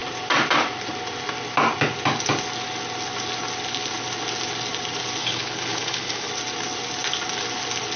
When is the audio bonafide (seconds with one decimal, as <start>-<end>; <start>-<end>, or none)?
0.0-5.2; 6.3-8.0